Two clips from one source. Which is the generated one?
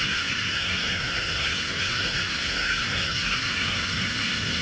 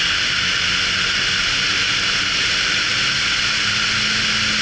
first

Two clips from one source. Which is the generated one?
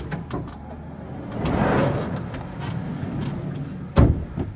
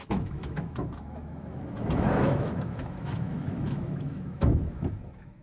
second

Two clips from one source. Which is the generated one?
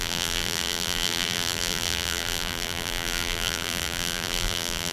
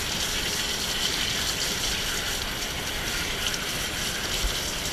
first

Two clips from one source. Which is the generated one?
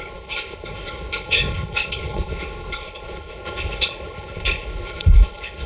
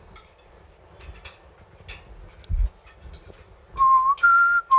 first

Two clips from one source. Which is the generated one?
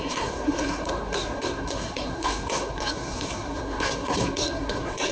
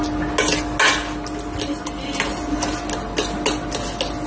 first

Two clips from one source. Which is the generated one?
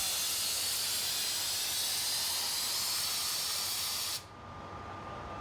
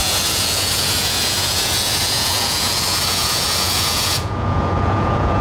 second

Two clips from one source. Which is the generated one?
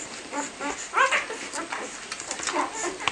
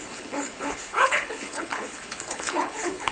second